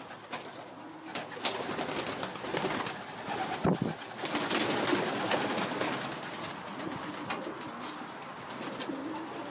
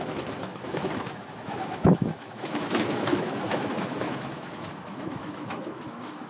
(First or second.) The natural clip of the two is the first